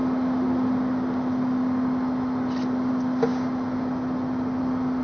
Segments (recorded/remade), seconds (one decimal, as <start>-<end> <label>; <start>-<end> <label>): 0.0-5.0 recorded